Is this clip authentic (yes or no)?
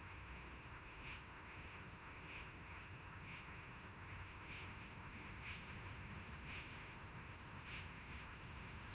no